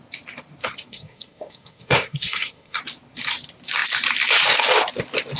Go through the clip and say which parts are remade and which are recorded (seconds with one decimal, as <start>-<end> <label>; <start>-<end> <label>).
0.0-0.9 recorded; 0.9-2.8 remade; 2.8-5.4 recorded